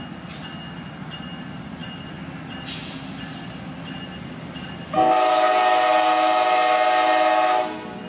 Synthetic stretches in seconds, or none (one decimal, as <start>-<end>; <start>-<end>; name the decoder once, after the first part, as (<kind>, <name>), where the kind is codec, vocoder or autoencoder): none